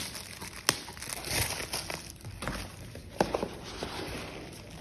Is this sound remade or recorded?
recorded